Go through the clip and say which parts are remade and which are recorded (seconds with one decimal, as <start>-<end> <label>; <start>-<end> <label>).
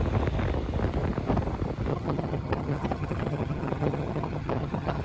0.0-1.9 recorded; 1.9-5.0 remade